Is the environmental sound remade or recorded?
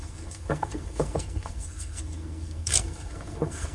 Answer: remade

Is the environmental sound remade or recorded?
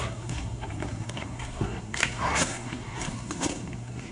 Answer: remade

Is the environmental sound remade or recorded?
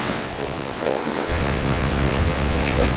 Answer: remade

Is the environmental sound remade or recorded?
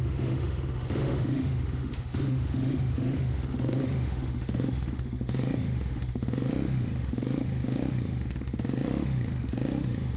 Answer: remade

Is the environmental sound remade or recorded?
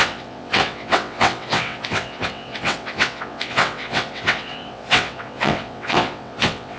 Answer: remade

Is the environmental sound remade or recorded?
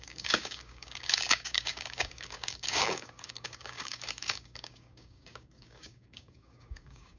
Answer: remade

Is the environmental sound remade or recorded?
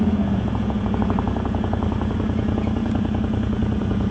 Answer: remade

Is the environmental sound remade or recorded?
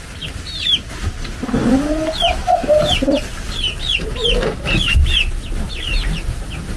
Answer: recorded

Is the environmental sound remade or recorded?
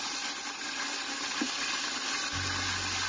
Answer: recorded